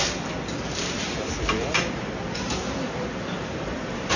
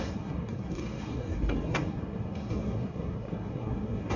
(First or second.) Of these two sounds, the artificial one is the second